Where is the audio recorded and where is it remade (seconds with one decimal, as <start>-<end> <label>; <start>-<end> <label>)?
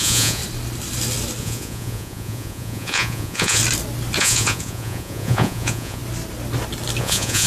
0.0-0.4 remade; 0.4-1.4 recorded; 1.4-3.6 remade; 3.6-4.2 recorded; 4.2-6.0 remade; 6.0-7.0 recorded; 7.0-7.5 remade